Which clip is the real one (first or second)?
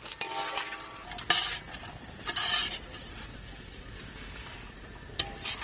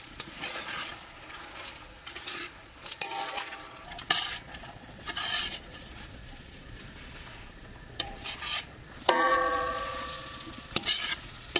first